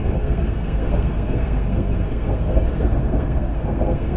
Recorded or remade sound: remade